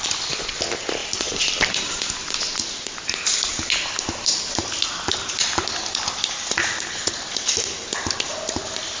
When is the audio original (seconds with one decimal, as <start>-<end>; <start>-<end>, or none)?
0.0-1.0; 1.5-9.0